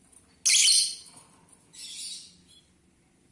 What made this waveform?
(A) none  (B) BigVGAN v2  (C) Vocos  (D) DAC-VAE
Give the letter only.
A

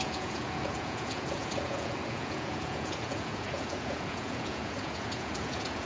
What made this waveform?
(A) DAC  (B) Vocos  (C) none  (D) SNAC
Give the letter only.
B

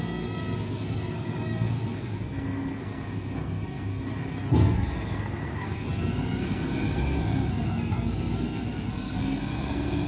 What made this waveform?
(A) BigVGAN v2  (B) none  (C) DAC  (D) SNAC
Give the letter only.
D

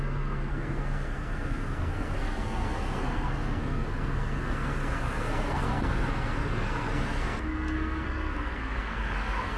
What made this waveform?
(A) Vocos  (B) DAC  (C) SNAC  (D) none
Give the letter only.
C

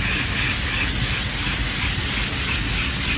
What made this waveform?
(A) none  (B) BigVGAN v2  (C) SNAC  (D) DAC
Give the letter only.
A